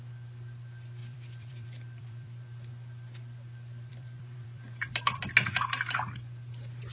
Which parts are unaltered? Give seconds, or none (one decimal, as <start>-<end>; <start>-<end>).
0.0-1.0; 2.7-3.9; 5.2-6.9